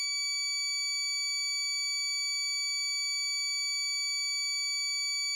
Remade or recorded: recorded